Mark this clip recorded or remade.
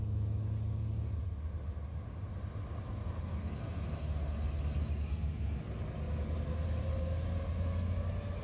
recorded